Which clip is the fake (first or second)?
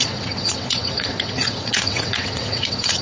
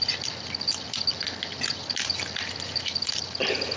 first